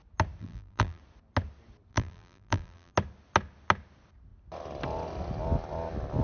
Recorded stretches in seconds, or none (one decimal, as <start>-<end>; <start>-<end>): 0.0-0.4; 1.0-1.9; 2.9-6.2